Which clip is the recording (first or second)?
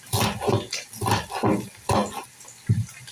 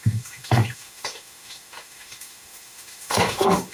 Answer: first